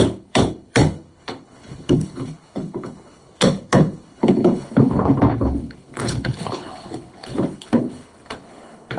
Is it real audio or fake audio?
fake